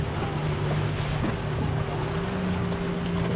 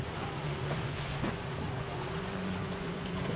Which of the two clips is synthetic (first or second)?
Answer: second